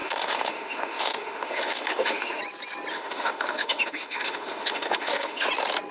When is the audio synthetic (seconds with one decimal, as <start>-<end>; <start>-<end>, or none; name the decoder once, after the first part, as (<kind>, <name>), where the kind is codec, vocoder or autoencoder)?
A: 0.0-2.4 (autoencoder, DAC-VAE); 2.9-5.5